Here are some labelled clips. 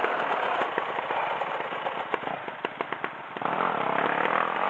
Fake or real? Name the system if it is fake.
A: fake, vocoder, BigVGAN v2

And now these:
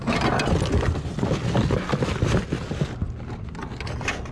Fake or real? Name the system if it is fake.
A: real